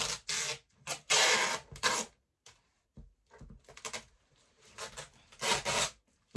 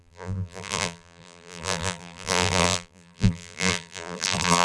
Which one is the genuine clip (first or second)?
first